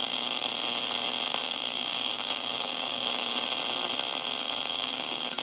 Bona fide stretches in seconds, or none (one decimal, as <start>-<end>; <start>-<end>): 0.5-1.4; 3.5-4.4